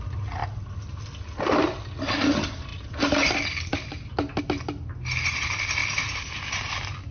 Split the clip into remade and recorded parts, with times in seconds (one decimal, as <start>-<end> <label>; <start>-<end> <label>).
0.0-7.1 recorded